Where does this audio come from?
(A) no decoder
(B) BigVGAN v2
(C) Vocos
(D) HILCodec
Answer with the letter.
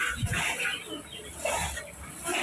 A